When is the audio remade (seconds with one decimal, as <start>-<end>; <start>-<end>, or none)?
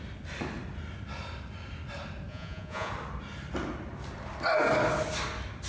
2.3-2.9